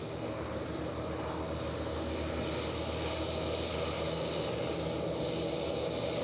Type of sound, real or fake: real